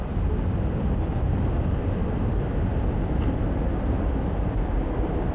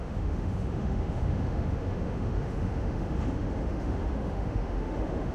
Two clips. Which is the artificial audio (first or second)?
second